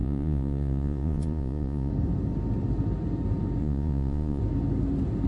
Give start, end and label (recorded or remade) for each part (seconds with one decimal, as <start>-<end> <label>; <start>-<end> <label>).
0.0-1.9 remade; 1.9-3.6 recorded; 3.6-4.4 remade; 4.4-5.3 recorded